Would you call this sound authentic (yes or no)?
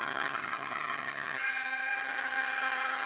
no